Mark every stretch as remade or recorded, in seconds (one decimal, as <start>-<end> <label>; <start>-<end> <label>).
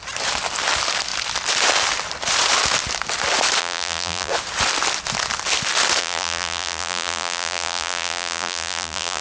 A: 0.0-3.6 recorded; 3.6-4.3 remade; 4.3-6.0 recorded; 6.0-9.2 remade